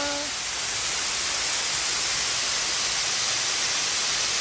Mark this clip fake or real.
real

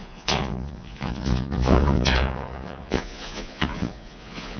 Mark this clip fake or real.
fake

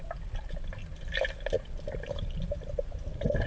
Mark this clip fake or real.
real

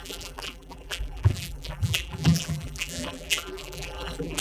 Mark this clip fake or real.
fake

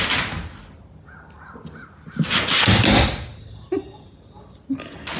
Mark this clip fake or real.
real